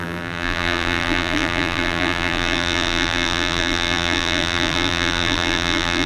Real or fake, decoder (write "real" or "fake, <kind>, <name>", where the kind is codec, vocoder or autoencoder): fake, vocoder, BigVGAN v2